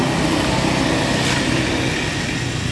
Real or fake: real